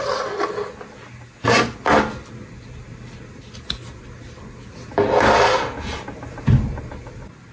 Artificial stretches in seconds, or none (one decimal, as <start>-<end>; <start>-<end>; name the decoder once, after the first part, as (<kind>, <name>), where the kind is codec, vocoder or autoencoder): 0.0-0.5 (vocoder, BigVGAN v2)